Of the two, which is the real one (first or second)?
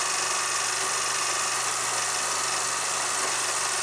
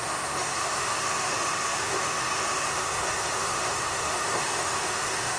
first